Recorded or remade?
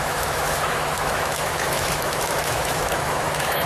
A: remade